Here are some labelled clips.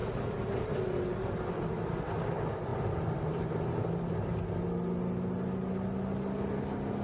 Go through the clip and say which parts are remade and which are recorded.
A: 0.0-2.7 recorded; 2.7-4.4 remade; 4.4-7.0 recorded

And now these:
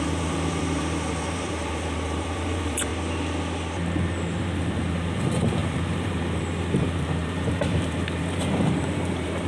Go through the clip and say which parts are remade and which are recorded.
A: 0.0-2.9 remade; 2.9-4.4 recorded; 4.4-9.5 remade